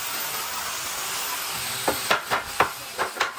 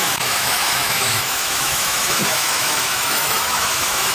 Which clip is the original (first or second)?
first